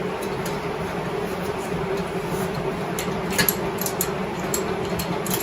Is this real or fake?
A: real